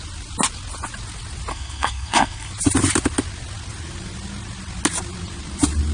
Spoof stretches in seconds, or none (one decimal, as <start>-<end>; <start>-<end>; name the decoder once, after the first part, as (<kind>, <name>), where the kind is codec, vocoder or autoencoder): 1.5-2.5 (codec, SNAC)